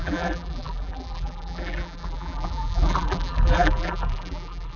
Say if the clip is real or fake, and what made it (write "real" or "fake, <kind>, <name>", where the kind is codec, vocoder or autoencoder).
fake, vocoder, BigVGAN v2